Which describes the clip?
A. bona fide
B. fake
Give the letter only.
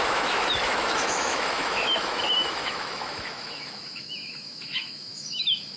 B